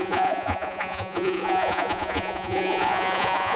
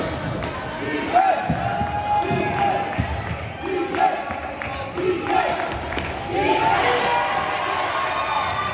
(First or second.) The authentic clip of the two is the second